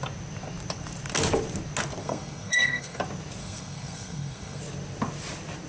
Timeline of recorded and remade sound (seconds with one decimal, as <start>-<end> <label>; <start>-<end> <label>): 0.0-2.0 recorded; 2.0-3.0 remade; 3.0-3.4 recorded; 3.4-4.6 remade; 4.6-5.7 recorded